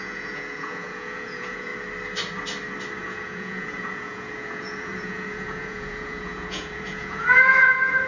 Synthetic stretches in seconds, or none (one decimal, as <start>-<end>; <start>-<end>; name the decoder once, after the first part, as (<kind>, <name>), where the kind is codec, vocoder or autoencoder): 0.0-1.7 (vocoder, Vocos); 3.0-8.1